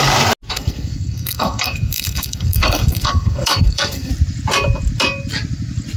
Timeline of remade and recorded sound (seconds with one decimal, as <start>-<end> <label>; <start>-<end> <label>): 0.0-0.5 recorded; 0.5-4.1 remade; 4.1-6.0 recorded